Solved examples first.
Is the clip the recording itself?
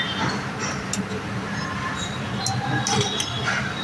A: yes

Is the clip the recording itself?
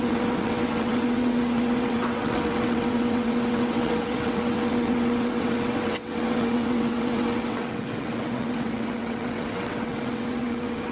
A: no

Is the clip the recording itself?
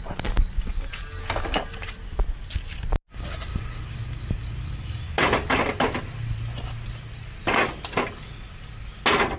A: yes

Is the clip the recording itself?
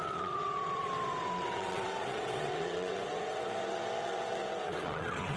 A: no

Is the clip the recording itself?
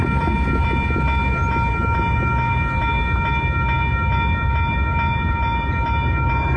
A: yes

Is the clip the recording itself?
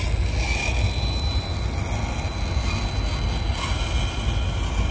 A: yes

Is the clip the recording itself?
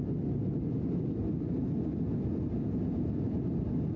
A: yes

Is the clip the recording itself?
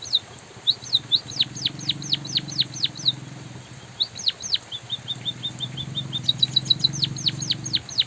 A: yes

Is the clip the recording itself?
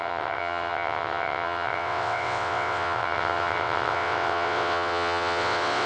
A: no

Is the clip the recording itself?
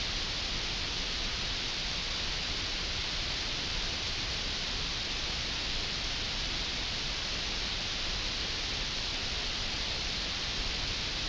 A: yes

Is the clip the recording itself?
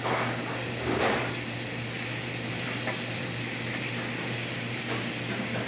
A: yes